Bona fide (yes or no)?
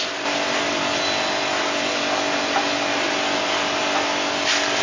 yes